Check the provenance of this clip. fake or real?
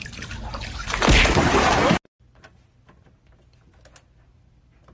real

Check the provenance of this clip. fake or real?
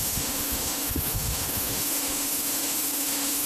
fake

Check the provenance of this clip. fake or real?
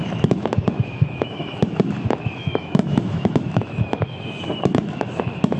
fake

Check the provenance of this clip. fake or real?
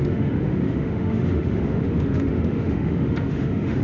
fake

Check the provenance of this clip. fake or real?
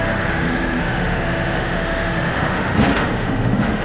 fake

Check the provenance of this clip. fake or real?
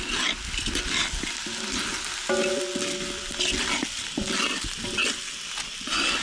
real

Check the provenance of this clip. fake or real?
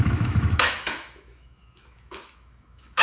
fake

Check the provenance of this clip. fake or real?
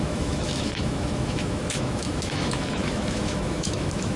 fake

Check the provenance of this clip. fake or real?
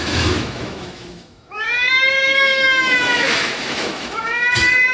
fake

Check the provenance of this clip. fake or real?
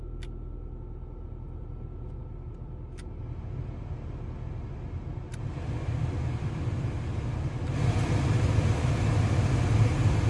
real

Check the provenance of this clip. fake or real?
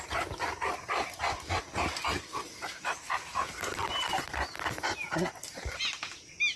real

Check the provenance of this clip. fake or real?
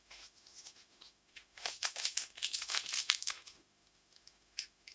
fake